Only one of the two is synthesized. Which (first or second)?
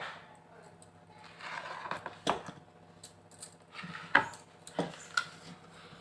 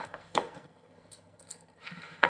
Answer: second